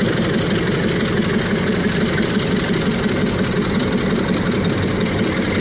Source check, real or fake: fake